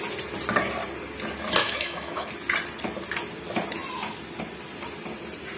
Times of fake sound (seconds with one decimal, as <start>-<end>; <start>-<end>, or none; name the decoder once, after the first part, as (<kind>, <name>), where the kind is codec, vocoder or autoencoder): 1.6-2.3 (autoencoder, DAC-VAE)